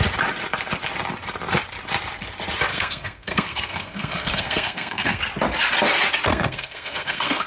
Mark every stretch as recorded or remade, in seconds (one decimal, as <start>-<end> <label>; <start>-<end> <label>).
0.0-2.7 recorded; 2.7-5.2 remade; 5.2-6.3 recorded; 6.3-7.5 remade